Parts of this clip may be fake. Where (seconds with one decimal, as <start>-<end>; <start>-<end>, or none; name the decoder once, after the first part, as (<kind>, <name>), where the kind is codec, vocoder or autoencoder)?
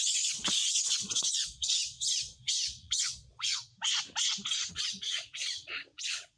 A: 0.0-3.7 (vocoder, Vocos); 4.7-6.4